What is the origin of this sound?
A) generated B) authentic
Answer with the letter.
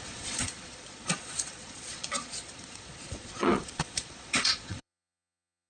A